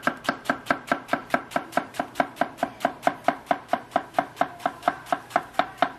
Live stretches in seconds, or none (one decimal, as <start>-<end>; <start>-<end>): 0.0-1.2; 4.8-6.0